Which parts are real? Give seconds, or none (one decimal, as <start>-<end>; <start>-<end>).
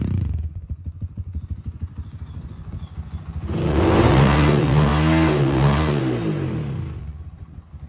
4.9-5.4; 6.0-7.0